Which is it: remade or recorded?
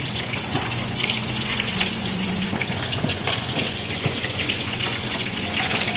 remade